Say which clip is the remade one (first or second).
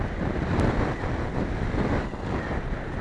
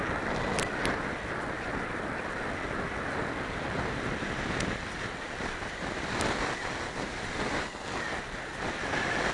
first